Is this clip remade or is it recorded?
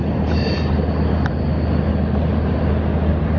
recorded